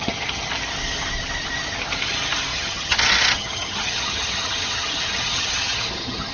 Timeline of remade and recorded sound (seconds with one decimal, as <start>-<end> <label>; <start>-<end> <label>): 0.0-0.5 remade; 0.5-2.5 recorded; 2.5-6.3 remade

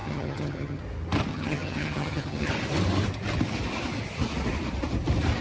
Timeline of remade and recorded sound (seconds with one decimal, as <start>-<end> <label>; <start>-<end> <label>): 0.0-0.8 remade; 0.8-1.3 recorded; 1.3-2.5 remade; 2.5-5.4 recorded

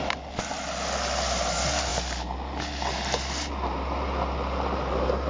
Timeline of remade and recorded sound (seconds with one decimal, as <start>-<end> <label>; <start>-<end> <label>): 0.0-5.3 recorded

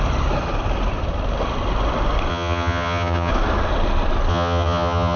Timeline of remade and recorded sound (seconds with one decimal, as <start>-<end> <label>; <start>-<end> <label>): 0.0-2.3 recorded; 2.3-3.3 remade; 3.3-4.3 recorded; 4.3-5.2 remade